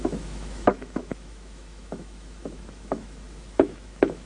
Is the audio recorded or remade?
remade